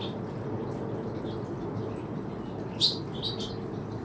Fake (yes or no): no